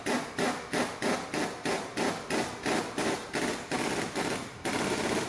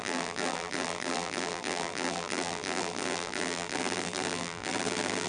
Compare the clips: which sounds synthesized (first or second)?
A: second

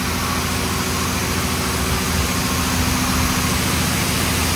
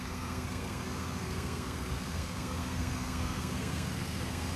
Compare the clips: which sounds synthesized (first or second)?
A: second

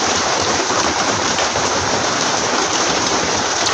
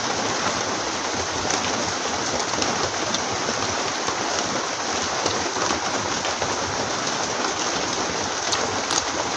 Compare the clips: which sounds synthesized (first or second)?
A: first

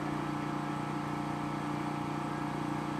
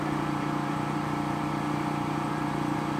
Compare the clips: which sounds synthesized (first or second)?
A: second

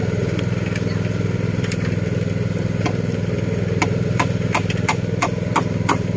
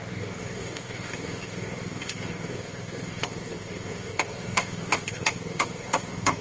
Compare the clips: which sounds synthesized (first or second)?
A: second